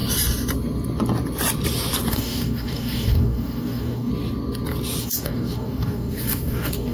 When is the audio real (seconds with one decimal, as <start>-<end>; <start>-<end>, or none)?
0.0-2.1; 4.1-5.0

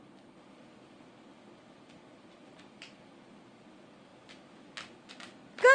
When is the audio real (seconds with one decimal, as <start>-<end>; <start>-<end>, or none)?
0.0-5.7

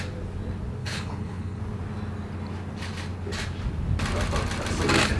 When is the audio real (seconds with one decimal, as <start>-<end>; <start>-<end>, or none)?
0.0-0.8; 1.6-5.2

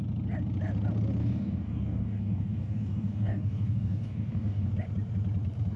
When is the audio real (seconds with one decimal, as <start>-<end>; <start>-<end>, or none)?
0.0-1.2; 4.7-5.8

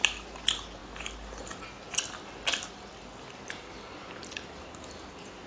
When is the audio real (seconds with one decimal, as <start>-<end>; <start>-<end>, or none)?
0.0-5.5

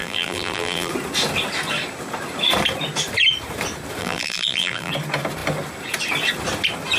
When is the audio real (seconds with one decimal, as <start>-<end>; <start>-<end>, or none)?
0.9-4.0; 4.9-7.0

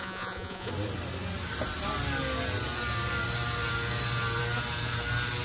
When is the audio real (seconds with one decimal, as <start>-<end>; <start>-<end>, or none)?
0.7-5.4

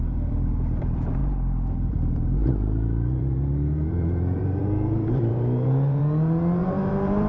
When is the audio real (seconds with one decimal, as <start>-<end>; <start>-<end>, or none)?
6.0-6.6